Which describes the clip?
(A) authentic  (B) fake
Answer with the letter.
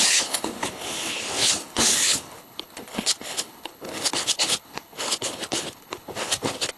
B